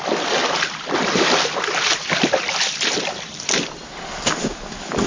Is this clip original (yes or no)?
no